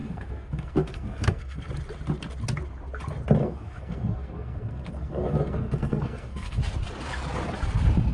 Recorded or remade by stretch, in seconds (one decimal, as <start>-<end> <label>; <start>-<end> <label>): 0.0-1.7 remade; 1.7-3.4 recorded; 3.4-6.6 remade; 6.6-8.1 recorded